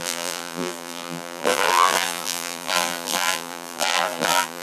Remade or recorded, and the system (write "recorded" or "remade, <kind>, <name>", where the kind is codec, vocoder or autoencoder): remade, vocoder, BigVGAN v2